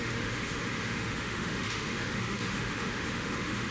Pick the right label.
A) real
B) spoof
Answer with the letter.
B